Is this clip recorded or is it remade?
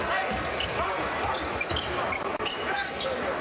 recorded